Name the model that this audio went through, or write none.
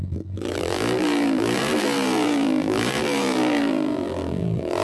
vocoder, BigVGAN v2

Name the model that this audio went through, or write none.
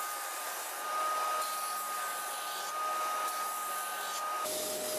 none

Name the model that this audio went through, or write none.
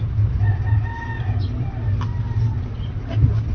none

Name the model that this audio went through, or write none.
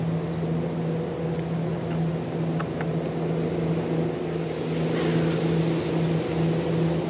none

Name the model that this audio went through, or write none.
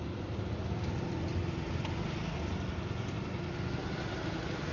none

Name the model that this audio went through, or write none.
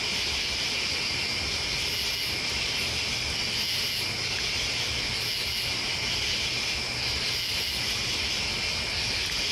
none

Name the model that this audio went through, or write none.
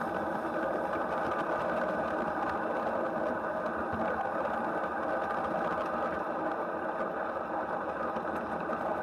none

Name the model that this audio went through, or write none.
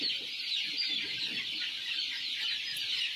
none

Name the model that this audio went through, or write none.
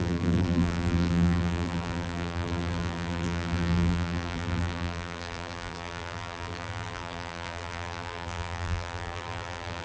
vocoder, BigVGAN v2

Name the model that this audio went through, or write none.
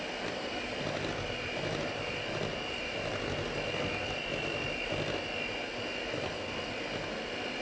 none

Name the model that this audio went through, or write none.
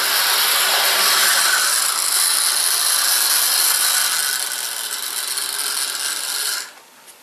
none